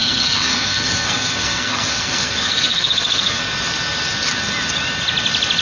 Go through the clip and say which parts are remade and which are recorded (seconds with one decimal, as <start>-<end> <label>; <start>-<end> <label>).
0.0-3.4 remade; 3.4-5.6 recorded